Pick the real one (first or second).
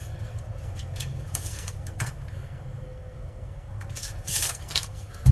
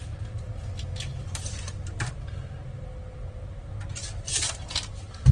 second